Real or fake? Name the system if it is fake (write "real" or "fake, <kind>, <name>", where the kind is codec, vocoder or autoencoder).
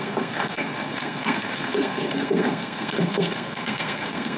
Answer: fake, codec, SNAC